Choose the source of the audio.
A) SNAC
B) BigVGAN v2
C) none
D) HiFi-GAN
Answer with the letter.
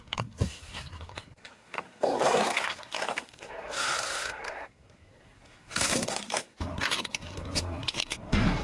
A